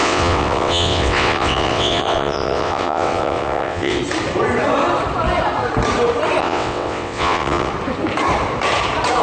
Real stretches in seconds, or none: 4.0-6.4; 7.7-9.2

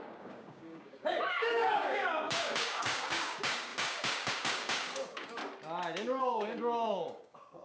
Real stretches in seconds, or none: 5.4-6.2

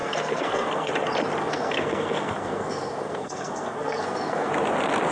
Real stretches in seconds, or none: 0.9-1.4; 4.5-5.1

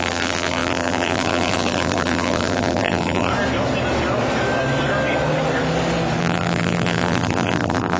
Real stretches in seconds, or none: 3.3-6.2

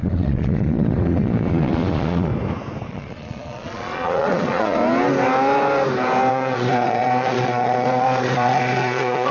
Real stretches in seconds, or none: 2.3-2.9; 4.8-6.3

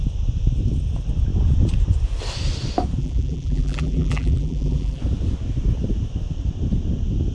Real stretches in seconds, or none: 0.0-3.0; 5.0-7.3

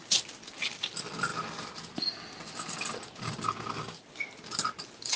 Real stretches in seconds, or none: 0.0-5.2

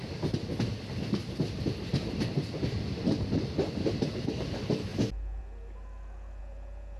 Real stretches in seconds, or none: 0.0-1.9; 4.2-7.0